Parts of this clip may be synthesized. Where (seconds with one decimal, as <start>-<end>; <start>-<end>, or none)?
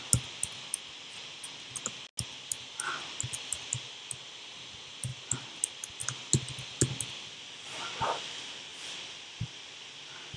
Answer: none